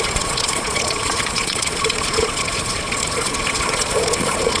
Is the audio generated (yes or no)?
yes